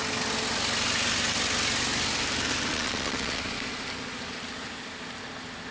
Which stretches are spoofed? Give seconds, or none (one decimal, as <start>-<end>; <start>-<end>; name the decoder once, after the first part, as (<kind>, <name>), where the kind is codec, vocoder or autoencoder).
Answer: 2.7-3.4 (vocoder, Vocos)